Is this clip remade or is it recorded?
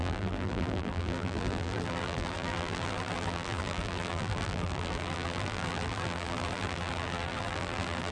remade